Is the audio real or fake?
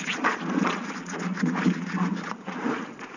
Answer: fake